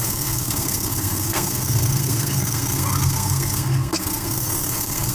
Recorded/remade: remade